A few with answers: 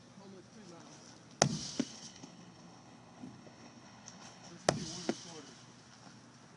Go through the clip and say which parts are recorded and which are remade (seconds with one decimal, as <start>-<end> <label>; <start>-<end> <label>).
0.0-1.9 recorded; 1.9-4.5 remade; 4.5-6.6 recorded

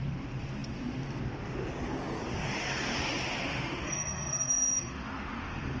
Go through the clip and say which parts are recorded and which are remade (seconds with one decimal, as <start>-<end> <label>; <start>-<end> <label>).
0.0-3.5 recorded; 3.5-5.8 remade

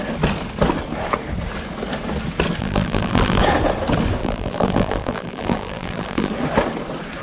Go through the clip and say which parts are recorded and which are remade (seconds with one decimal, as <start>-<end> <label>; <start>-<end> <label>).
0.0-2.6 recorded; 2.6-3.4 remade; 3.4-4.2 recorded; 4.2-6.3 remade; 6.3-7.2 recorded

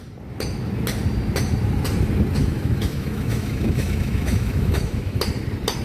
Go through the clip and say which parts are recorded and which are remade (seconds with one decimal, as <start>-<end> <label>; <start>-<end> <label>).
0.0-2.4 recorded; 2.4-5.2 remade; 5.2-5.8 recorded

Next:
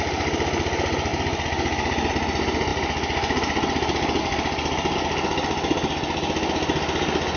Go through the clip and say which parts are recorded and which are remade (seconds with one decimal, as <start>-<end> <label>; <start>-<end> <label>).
0.0-7.4 recorded

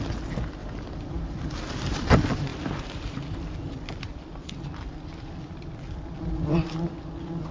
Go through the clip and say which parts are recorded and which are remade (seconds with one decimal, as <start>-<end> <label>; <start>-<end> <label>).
0.0-0.6 recorded; 0.6-2.1 remade; 2.1-2.5 recorded; 2.5-6.2 remade; 6.2-7.5 recorded

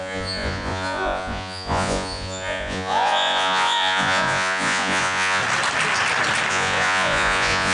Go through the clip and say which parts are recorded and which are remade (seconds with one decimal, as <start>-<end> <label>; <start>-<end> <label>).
0.0-5.4 remade; 5.4-6.5 recorded; 6.5-7.7 remade

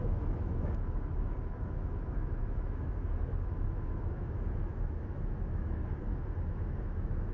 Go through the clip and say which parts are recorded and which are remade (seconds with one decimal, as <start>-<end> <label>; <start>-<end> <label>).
0.0-5.8 remade; 5.8-6.5 recorded; 6.5-7.3 remade